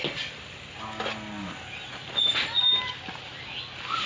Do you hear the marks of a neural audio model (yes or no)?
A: no